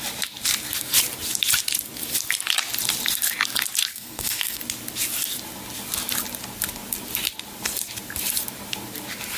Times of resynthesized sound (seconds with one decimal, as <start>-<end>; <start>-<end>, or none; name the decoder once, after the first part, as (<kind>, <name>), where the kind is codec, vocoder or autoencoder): 3.9-4.6 (codec, SNAC)